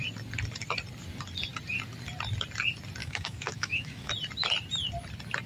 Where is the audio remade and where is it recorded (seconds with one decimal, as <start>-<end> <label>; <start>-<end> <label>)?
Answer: 0.0-3.0 recorded; 3.0-4.1 remade; 4.1-5.5 recorded